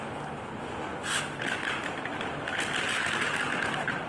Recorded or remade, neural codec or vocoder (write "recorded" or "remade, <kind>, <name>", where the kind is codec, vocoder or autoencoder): recorded